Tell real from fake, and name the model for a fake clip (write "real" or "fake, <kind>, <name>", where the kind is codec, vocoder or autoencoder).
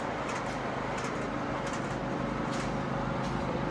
real